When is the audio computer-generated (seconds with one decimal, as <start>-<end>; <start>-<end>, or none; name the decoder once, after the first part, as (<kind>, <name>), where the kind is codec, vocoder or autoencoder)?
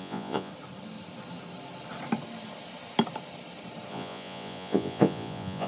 0.0-0.5 (vocoder, Vocos); 3.9-5.7